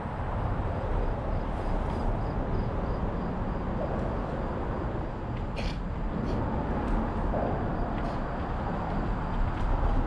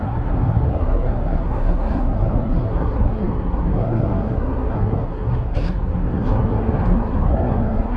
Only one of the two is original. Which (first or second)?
first